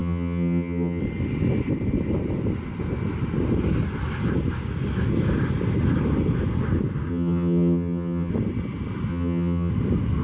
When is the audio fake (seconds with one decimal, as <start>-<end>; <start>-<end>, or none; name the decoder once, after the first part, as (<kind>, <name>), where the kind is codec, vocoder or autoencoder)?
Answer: 0.0-1.0 (vocoder, HiFi-GAN); 7.1-8.3; 9.1-9.7